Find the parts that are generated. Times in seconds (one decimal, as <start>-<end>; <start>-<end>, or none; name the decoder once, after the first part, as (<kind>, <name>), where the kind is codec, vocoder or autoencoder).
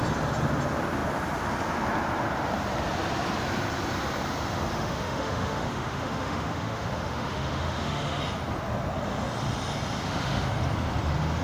4.7-8.2 (autoencoder, DAC-VAE); 10.0-10.5